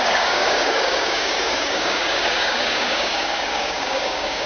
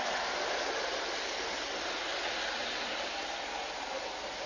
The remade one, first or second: first